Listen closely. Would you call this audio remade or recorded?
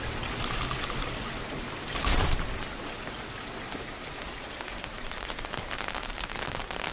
recorded